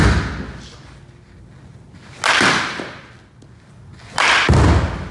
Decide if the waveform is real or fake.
real